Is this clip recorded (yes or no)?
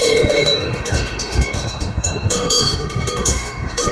no